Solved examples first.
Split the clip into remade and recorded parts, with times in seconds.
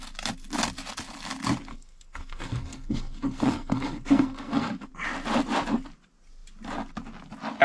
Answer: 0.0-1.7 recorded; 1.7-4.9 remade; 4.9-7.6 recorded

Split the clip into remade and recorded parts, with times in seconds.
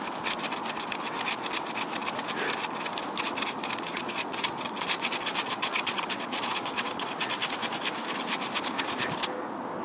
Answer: 0.0-3.6 recorded; 3.6-7.1 remade; 7.1-9.8 recorded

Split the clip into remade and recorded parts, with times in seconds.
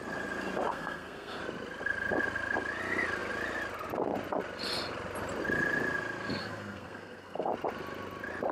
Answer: 0.0-0.7 recorded; 0.7-1.4 remade; 1.4-6.4 recorded; 6.4-7.5 remade; 7.5-8.5 recorded